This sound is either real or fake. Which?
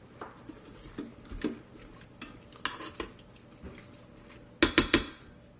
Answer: real